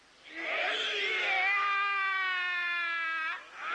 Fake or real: real